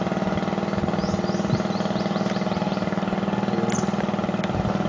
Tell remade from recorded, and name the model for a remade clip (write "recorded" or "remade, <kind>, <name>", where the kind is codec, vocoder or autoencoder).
recorded